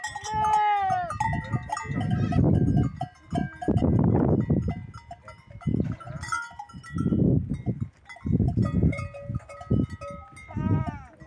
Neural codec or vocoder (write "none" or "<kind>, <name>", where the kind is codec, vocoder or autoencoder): none